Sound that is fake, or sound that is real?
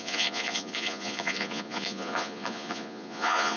fake